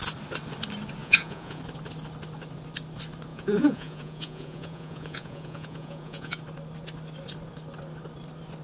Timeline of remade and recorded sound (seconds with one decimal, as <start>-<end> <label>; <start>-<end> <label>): 0.0-1.0 recorded; 1.0-1.6 remade; 1.6-3.3 recorded; 3.3-6.4 remade; 6.4-8.6 recorded